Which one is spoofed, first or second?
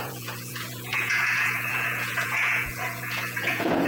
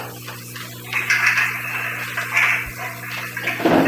first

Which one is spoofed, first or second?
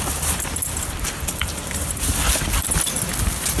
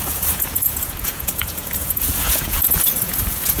second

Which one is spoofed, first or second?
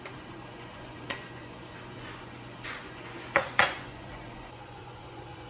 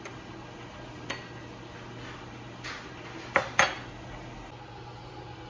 first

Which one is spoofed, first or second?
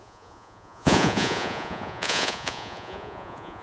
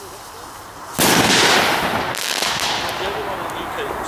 first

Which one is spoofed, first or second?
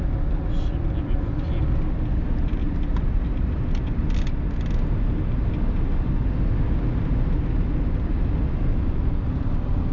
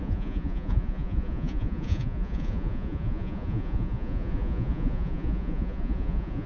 second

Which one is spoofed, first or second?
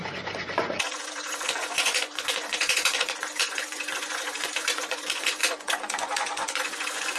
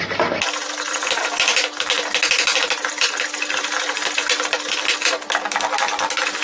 first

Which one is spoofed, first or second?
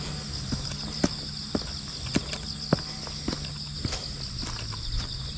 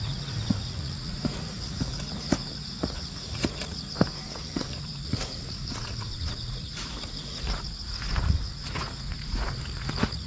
second